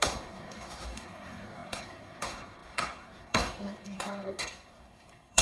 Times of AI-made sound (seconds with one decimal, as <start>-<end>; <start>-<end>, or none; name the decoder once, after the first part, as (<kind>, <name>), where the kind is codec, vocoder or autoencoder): 0.0-5.4 (codec, SNAC)